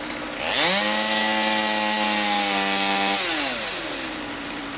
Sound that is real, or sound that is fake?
real